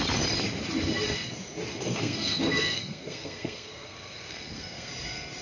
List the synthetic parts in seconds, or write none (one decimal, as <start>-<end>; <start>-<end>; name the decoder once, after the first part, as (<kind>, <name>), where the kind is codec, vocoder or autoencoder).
1.7-4.9 (codec, SNAC)